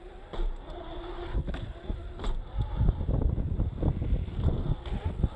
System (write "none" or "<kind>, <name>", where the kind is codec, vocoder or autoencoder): none